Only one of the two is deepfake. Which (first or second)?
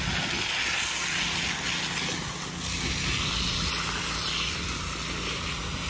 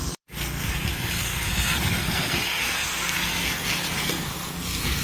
second